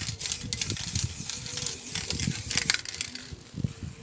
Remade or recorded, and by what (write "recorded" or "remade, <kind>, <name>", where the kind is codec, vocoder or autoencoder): recorded